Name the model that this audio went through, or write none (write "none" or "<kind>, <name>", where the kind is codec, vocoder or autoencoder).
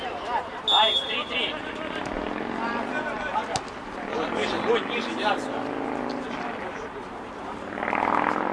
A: none